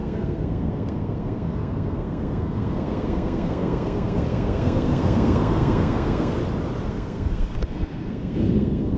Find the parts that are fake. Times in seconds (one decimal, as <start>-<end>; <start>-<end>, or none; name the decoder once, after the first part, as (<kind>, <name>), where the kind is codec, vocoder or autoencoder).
0.0-6.4 (codec, SNAC); 6.9-9.0